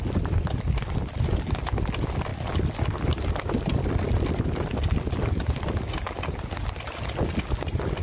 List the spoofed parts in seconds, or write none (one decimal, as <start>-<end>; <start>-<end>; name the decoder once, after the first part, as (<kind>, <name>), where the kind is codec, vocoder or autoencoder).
none